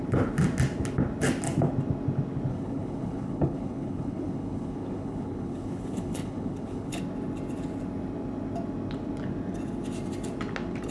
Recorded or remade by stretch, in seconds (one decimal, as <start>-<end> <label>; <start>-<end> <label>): 0.0-2.5 recorded; 2.5-7.0 remade; 7.0-10.9 recorded